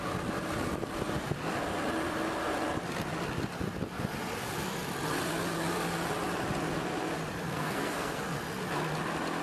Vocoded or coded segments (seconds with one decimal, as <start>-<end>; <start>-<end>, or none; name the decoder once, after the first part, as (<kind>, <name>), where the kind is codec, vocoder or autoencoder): 7.5-8.2 (codec, SNAC)